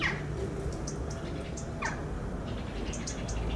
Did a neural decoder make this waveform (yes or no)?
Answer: no